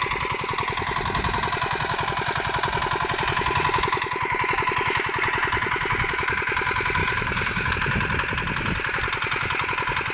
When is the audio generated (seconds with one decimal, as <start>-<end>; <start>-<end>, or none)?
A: 7.0-7.7